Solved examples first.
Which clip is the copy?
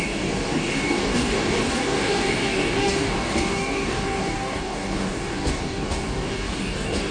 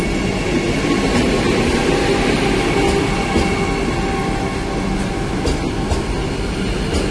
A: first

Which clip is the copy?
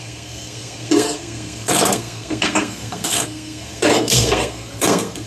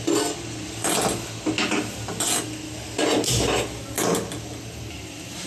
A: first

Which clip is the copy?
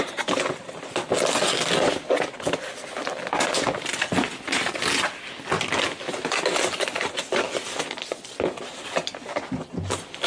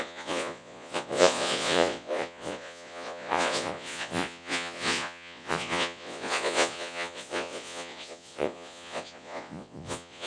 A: second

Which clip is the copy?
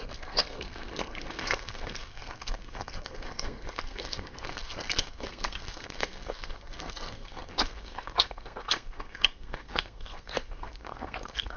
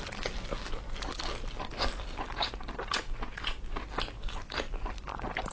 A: first